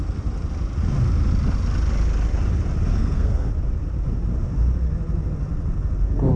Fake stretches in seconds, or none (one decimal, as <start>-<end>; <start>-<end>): 2.9-3.5